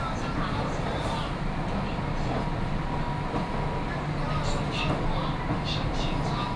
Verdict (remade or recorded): recorded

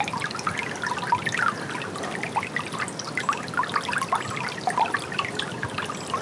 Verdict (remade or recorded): recorded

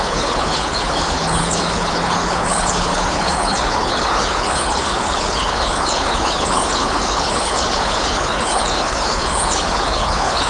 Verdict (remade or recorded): remade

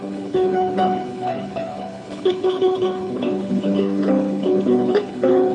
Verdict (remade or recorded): remade